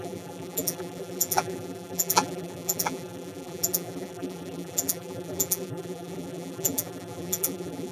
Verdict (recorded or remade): remade